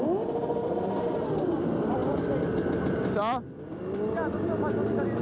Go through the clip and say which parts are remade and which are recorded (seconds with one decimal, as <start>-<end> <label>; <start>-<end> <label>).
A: 0.0-5.2 recorded